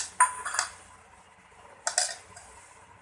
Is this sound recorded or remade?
recorded